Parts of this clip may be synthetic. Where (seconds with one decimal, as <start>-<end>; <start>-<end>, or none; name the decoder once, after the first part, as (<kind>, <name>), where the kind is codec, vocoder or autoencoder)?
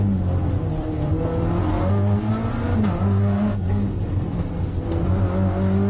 1.7-2.3 (codec, SNAC); 3.2-5.1